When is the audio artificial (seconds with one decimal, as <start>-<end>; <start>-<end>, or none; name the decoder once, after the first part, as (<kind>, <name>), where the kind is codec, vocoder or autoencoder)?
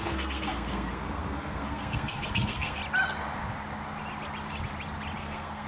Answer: 0.0-2.8 (codec, SNAC); 5.2-5.7